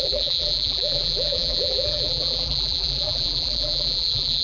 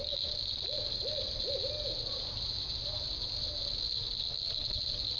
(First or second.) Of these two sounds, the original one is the second